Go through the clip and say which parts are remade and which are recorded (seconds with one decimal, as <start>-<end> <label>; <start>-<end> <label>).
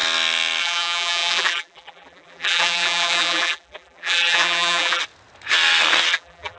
0.0-0.6 recorded; 0.6-5.0 remade; 5.0-6.1 recorded; 6.1-6.6 remade